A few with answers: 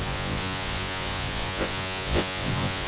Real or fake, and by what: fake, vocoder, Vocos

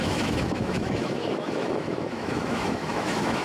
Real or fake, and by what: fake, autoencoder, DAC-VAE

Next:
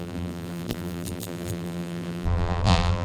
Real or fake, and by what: fake, vocoder, BigVGAN v2